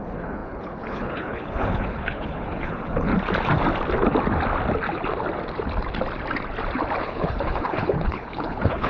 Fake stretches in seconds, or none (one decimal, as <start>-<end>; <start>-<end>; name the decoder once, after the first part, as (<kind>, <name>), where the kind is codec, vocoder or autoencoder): 0.0-3.1 (codec, HILCodec); 7.0-8.9